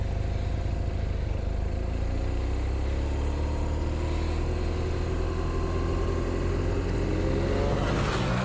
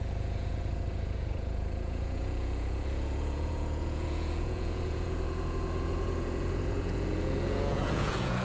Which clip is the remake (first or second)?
second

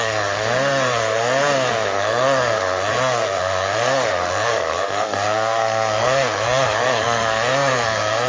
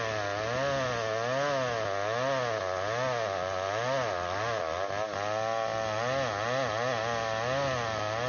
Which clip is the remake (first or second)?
first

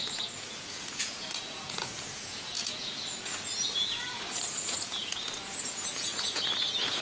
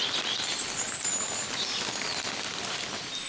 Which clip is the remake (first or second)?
first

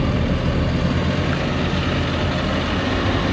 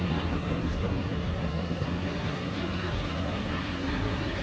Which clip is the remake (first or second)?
second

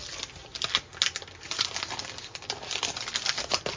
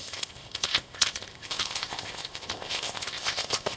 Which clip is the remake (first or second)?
second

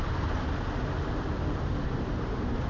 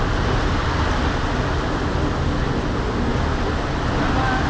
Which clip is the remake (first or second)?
first